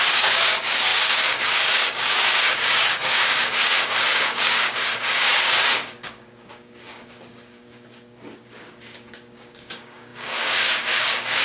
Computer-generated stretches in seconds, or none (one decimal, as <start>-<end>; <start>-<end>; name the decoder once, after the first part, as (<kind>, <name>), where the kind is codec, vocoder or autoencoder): 0.0-11.4 (codec, DAC)